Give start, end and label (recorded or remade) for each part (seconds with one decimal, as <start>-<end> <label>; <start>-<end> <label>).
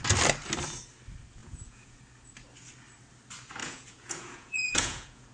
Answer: 0.0-1.4 recorded; 1.4-2.0 remade; 2.0-3.6 recorded; 3.6-5.3 remade